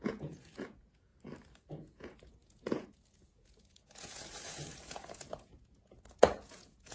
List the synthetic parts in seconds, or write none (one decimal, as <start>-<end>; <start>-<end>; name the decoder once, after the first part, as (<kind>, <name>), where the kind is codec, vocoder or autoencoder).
0.0-1.1 (vocoder, Vocos); 1.7-6.9